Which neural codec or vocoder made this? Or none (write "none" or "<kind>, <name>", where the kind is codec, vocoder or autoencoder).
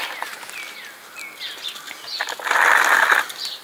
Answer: none